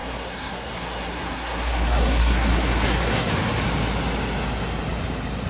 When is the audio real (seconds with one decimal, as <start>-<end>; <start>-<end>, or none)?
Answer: 3.3-5.5